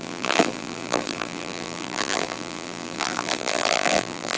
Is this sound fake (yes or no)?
yes